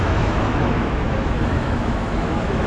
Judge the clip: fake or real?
fake